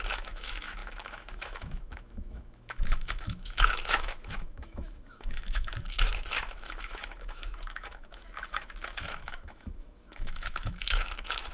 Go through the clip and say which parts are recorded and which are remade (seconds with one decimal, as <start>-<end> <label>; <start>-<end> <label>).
0.0-11.5 remade